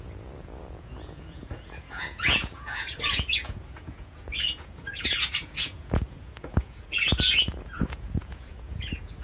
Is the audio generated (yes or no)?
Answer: yes